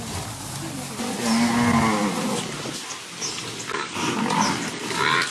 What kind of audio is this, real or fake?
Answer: real